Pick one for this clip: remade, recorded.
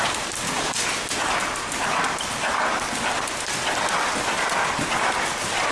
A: recorded